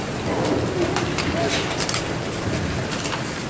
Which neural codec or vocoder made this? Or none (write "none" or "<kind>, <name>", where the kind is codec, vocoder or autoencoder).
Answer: none